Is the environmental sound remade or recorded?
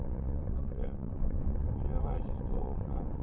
remade